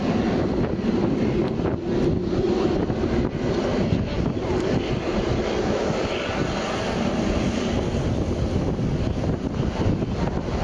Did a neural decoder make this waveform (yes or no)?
no